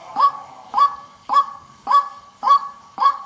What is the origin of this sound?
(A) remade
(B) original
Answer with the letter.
A